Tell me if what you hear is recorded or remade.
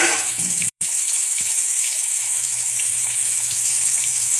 remade